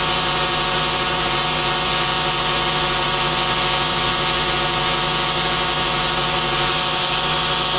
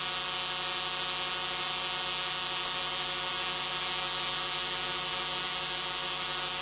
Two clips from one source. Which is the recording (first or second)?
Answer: second